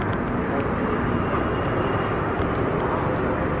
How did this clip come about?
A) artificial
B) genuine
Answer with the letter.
B